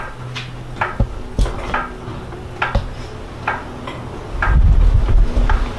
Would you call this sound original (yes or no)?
yes